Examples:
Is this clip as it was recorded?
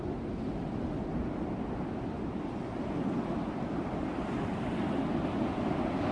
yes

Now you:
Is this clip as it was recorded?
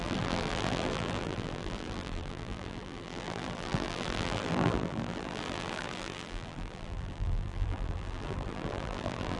no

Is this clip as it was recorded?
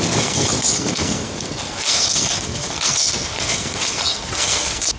no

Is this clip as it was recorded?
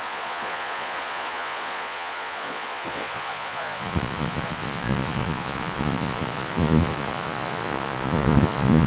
no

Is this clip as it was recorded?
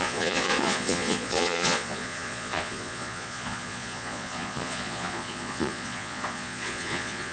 no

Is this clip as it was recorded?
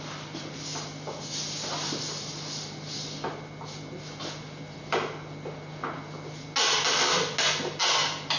yes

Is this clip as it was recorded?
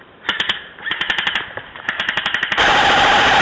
no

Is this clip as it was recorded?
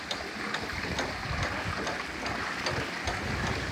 yes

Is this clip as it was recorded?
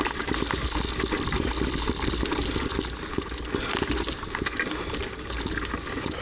yes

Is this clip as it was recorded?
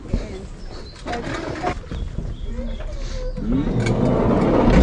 yes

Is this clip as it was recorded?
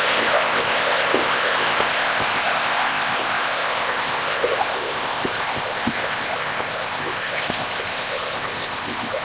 no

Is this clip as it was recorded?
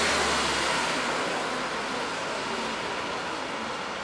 yes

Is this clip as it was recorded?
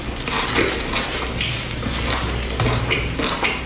yes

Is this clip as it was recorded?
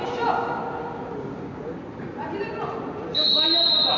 yes